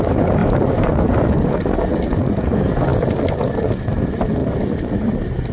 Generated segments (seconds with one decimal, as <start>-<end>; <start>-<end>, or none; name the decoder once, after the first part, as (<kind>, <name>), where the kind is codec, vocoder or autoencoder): 0.4-1.5 (vocoder, BigVGAN v2); 4.4-5.0